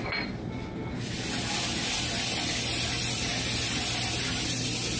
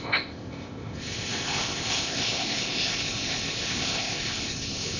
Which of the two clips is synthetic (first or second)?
second